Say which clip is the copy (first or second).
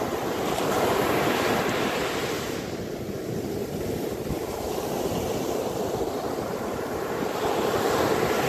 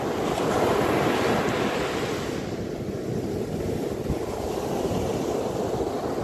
first